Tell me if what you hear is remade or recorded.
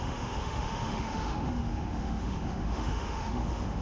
remade